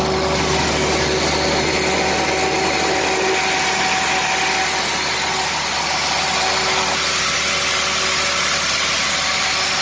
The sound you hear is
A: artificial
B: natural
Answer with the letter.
B